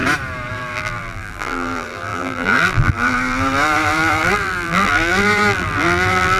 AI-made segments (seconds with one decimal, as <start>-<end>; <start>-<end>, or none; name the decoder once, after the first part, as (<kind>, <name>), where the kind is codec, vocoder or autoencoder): 0.5-6.4 (vocoder, BigVGAN v2)